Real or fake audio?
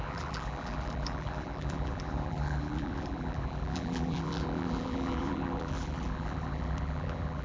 fake